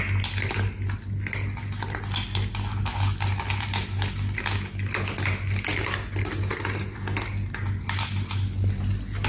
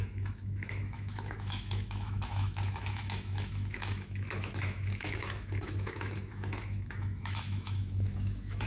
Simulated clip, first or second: second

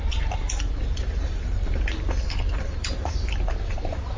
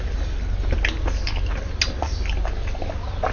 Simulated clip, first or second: first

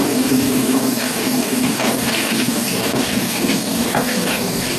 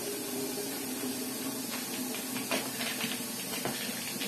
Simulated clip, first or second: first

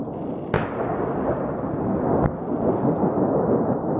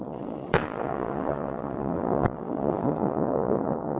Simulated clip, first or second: second